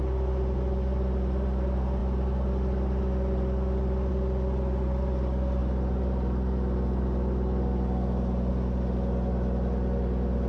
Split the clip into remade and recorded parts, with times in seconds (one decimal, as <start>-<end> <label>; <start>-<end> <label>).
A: 0.0-10.5 recorded